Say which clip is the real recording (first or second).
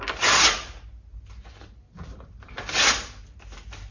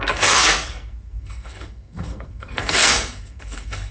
first